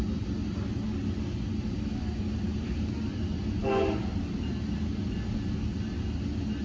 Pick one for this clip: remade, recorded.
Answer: recorded